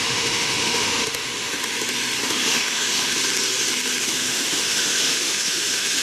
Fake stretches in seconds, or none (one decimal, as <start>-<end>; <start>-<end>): 0.0-1.6; 2.2-3.2; 4.0-6.0